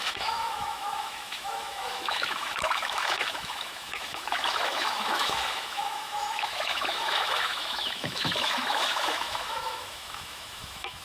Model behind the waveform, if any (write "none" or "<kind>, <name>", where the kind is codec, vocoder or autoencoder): autoencoder, DAC-VAE